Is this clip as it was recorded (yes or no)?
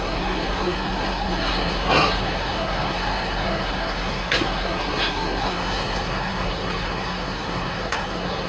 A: no